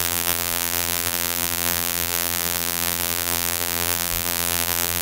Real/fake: fake